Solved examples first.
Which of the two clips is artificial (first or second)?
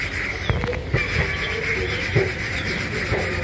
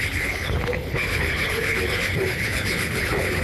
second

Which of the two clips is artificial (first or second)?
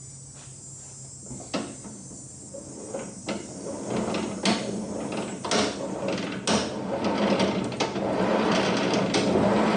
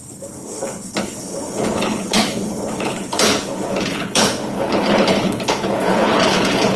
second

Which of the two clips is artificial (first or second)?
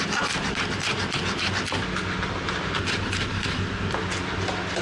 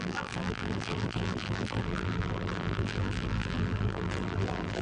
second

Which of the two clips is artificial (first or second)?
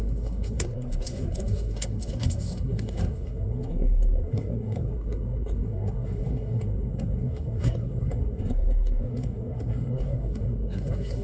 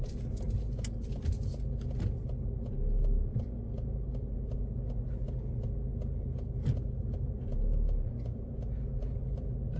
first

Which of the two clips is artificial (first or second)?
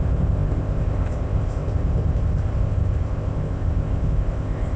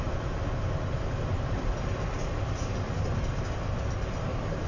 first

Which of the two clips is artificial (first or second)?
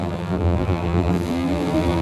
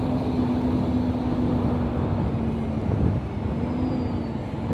first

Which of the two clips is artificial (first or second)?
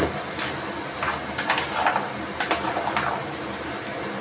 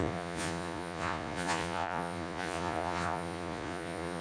second